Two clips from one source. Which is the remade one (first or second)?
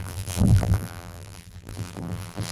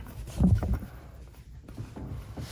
first